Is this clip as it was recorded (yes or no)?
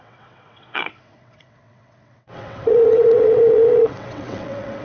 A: no